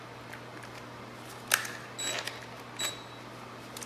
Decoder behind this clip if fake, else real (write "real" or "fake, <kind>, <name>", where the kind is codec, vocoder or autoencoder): real